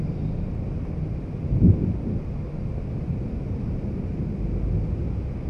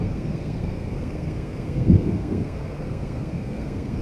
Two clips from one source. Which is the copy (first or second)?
second